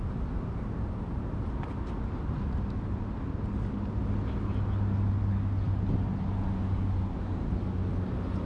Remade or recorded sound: recorded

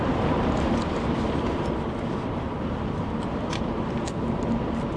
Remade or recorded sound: recorded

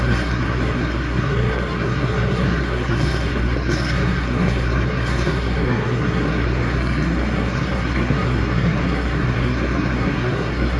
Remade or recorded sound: remade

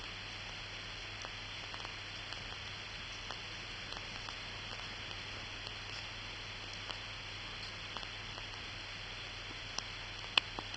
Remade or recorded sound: recorded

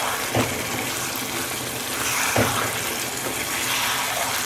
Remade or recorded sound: recorded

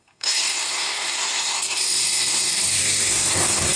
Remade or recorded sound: remade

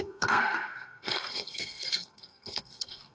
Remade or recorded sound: remade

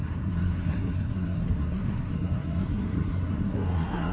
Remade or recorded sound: remade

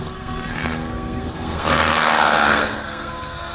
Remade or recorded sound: remade